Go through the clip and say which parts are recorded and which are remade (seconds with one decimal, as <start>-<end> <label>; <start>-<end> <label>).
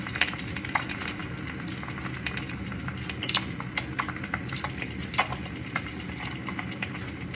0.0-1.2 remade; 1.2-2.4 recorded; 2.4-2.9 remade; 2.9-5.8 recorded; 5.8-7.3 remade